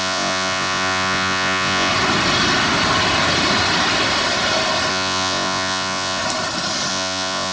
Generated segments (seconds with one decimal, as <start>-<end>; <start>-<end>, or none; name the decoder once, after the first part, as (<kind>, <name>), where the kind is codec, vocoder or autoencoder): 0.0-1.9 (vocoder, Vocos); 4.9-6.2; 6.9-7.5